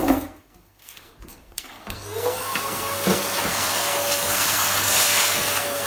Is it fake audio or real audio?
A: fake